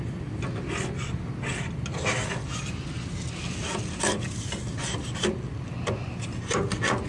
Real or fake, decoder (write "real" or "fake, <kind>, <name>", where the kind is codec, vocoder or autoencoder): real